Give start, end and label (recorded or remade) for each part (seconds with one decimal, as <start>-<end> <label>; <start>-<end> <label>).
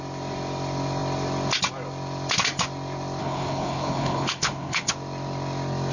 0.0-3.2 recorded; 3.2-4.9 remade; 4.9-5.9 recorded